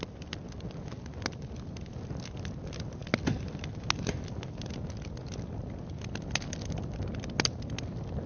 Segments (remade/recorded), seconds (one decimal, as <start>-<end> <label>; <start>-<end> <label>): 0.0-8.3 recorded